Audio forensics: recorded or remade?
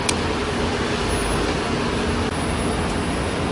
recorded